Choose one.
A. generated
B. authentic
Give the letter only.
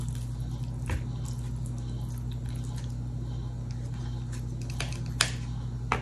B